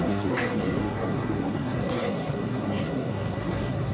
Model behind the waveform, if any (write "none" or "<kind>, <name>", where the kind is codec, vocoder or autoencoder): codec, SNAC